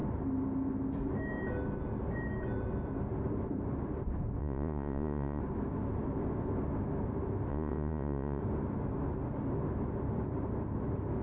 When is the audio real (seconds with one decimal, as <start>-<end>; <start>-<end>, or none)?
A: 0.0-4.4; 5.4-7.5; 8.4-11.2